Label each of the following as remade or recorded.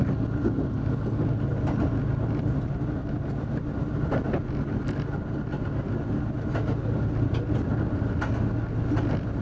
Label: recorded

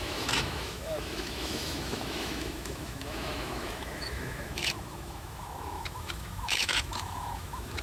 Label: remade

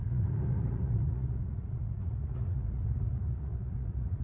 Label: remade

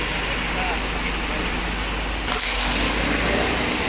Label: recorded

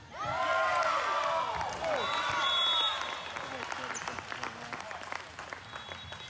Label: recorded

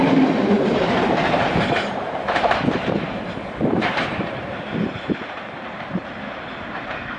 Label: remade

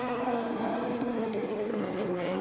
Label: remade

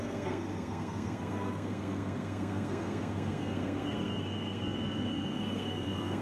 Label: remade